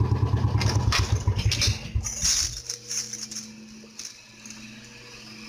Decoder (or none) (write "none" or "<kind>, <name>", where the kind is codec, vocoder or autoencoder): none